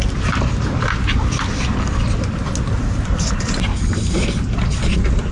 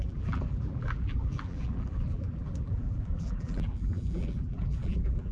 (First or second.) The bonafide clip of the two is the first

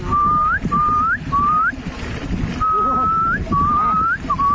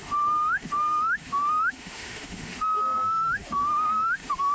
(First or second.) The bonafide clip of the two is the first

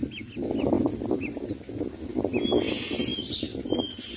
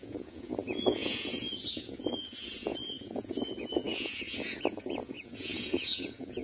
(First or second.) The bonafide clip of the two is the first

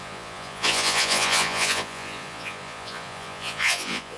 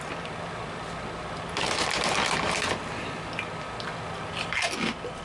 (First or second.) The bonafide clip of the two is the second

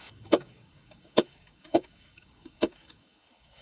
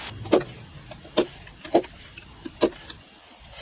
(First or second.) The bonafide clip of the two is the second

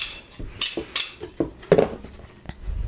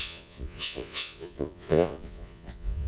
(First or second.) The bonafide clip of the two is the first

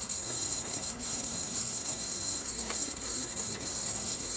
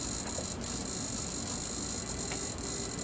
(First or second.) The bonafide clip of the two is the second